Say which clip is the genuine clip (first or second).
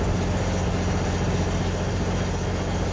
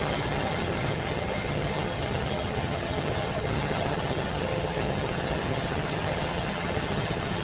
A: first